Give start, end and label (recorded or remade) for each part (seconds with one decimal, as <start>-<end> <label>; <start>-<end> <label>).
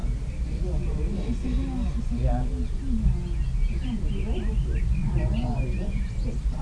0.0-6.6 recorded